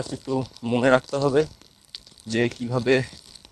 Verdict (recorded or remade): remade